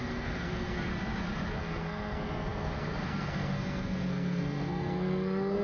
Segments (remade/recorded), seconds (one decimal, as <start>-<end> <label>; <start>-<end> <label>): 0.0-0.9 remade; 0.9-1.6 recorded; 1.6-5.6 remade